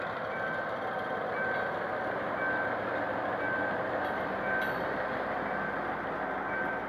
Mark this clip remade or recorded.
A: recorded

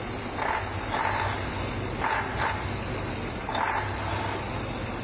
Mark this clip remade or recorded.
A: recorded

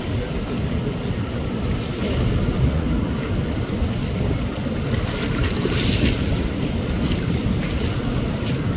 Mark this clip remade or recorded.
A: recorded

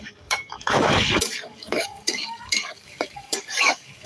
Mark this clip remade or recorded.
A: remade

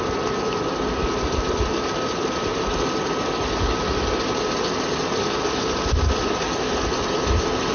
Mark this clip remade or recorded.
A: recorded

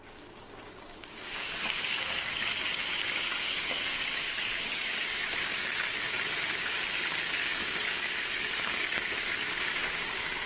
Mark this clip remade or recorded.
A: remade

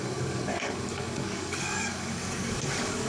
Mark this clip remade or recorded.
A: remade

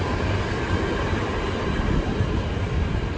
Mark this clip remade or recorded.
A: recorded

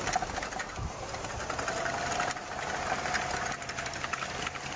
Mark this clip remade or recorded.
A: recorded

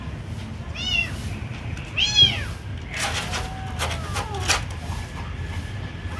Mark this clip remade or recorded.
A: recorded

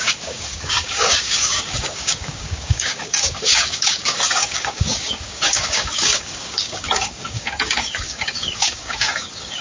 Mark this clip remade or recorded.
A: remade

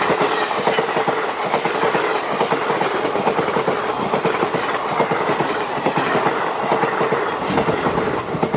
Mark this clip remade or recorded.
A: recorded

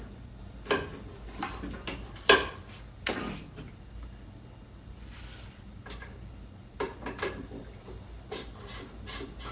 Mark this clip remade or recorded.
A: recorded